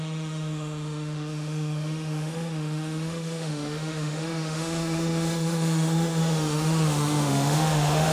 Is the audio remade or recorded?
remade